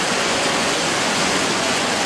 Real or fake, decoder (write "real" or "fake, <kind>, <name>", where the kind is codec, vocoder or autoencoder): fake, vocoder, Vocos